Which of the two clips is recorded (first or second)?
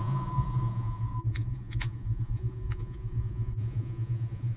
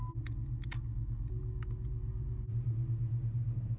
second